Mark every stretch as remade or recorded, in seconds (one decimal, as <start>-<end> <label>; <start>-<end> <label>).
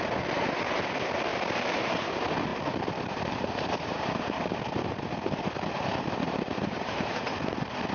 0.0-1.3 recorded; 1.3-2.1 remade; 2.1-2.5 recorded; 2.5-7.2 remade; 7.2-7.9 recorded